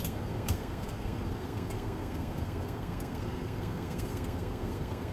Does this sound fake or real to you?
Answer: fake